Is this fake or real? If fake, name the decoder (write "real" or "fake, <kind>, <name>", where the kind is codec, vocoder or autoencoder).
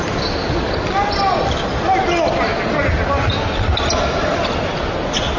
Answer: real